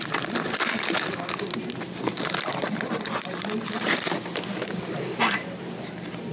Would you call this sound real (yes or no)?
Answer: no